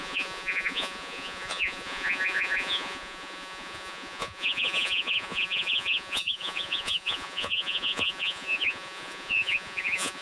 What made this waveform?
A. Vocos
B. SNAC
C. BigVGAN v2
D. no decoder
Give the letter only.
A